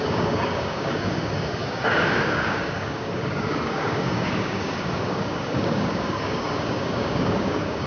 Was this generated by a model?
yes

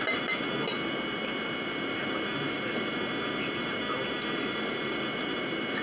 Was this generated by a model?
no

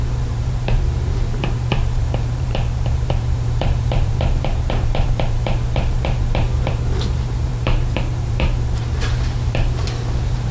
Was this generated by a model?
yes